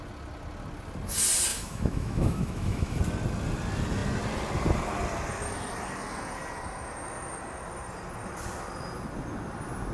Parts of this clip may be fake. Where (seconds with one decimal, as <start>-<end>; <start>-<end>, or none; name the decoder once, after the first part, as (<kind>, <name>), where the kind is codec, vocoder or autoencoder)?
1.5-3.0 (autoencoder, DAC-VAE)